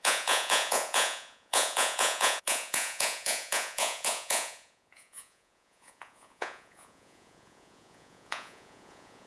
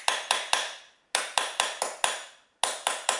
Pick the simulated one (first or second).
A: first